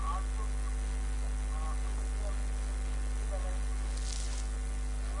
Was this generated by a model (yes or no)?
no